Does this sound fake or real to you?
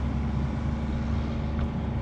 real